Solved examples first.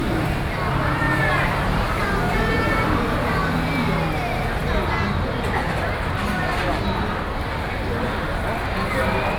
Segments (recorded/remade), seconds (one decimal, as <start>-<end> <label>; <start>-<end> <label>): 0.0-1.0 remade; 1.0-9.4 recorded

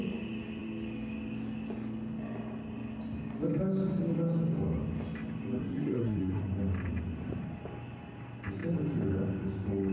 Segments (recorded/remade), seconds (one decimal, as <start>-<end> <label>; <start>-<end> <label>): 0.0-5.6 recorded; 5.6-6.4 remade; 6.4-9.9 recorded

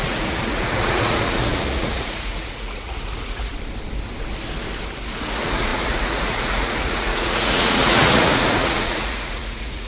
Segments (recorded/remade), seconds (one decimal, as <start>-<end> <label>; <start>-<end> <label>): 0.0-3.5 remade; 3.5-5.2 recorded; 5.2-9.9 remade

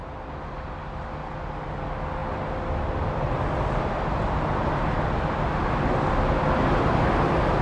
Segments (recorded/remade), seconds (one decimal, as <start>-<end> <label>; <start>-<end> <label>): 0.0-7.6 recorded